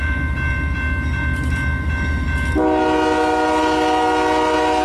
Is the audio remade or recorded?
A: recorded